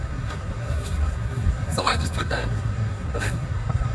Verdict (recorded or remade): remade